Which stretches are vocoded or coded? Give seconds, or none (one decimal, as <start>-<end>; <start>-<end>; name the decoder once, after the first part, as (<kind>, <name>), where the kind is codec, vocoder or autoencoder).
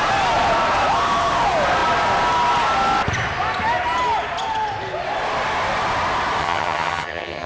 6.4-7.5 (vocoder, HiFi-GAN)